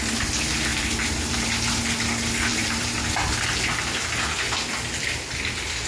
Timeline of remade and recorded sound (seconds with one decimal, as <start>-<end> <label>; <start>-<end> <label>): 0.0-0.7 recorded; 0.7-1.8 remade; 1.8-2.5 recorded; 2.5-3.3 remade; 3.3-5.9 recorded